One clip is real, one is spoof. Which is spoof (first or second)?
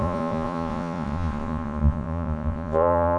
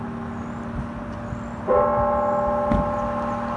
first